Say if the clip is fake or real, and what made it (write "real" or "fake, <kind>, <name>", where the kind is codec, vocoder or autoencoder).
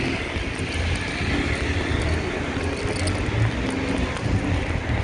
real